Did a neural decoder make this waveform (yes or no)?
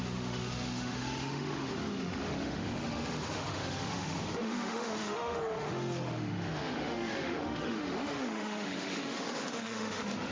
yes